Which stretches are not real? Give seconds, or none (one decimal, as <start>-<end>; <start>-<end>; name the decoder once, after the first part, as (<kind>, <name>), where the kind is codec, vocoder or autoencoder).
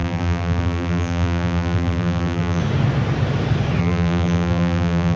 0.0-2.6 (vocoder, BigVGAN v2); 3.8-5.2